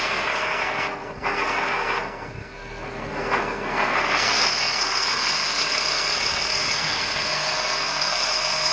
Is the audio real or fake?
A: fake